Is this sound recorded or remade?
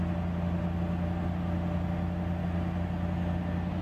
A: recorded